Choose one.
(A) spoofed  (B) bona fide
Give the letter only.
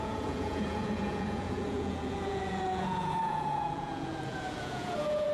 A